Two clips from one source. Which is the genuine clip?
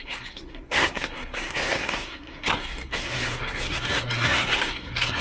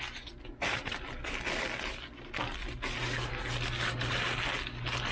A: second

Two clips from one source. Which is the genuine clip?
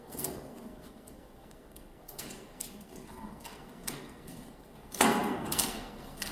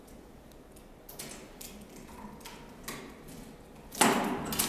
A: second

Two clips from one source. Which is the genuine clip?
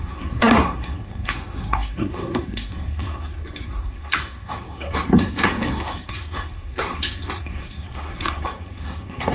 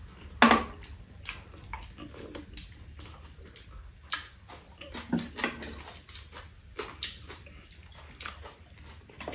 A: second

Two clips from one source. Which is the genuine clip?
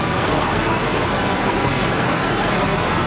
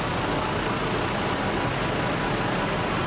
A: second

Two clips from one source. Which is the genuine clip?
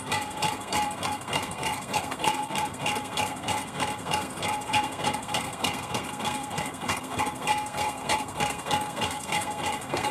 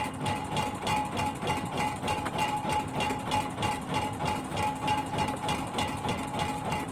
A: second